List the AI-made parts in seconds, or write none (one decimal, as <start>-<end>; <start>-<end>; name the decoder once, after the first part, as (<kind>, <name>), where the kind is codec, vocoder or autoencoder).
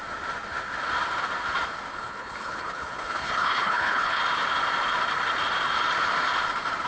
1.9-4.2 (codec, HILCodec)